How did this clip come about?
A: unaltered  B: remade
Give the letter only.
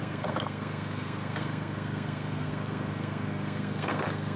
B